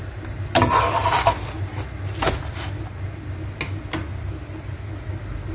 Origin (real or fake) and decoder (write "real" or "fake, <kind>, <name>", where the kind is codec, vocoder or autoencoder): real